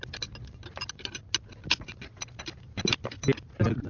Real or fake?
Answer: real